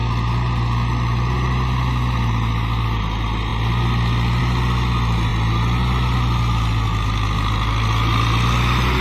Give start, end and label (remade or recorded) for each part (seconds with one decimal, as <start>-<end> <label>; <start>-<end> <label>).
0.0-9.0 recorded

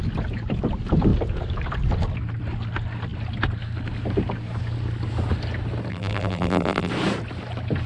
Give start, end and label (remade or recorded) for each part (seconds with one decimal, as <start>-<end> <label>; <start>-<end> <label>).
0.0-5.9 recorded; 5.9-6.9 remade; 6.9-7.9 recorded

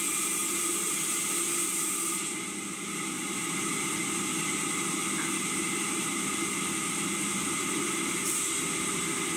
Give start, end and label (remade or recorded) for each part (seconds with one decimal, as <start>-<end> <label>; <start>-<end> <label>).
0.0-9.4 recorded

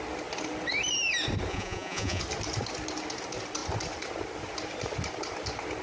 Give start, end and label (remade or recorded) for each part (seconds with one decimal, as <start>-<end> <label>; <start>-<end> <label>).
0.0-1.5 recorded; 1.5-2.2 remade; 2.2-5.8 recorded

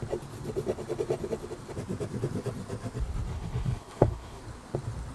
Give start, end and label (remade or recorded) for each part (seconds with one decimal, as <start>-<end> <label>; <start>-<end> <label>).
0.0-3.3 recorded; 3.3-4.4 remade; 4.4-5.1 recorded

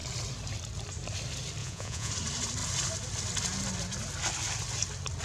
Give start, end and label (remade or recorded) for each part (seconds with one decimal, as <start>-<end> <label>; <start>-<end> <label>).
0.0-1.6 recorded; 1.6-2.1 remade; 2.1-5.2 recorded